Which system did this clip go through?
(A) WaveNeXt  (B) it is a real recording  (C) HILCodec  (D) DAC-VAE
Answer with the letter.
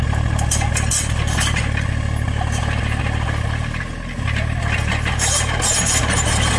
B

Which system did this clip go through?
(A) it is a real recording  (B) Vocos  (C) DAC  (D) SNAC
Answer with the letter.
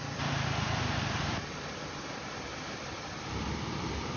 A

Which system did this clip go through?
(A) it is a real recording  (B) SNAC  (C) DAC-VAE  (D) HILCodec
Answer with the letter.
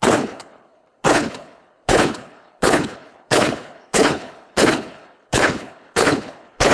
D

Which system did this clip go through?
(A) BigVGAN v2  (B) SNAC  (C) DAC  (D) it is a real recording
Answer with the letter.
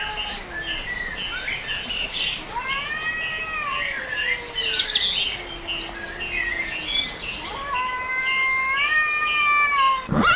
D